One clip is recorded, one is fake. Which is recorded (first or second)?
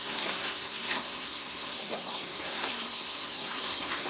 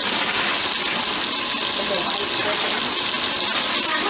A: second